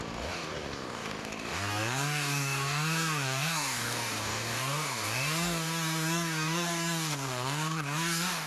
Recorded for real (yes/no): no